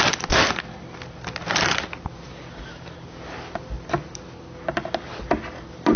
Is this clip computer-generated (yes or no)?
no